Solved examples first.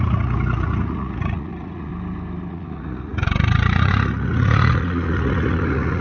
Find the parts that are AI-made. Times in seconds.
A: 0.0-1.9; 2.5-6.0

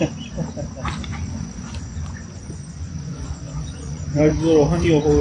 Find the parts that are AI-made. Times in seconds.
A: 1.1-4.2